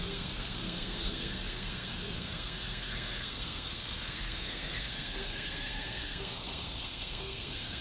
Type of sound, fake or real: fake